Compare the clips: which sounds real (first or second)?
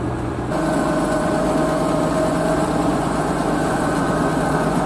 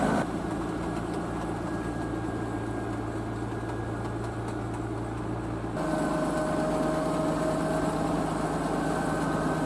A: second